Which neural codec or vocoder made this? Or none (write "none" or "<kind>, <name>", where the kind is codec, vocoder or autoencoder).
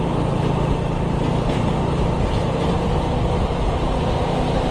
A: none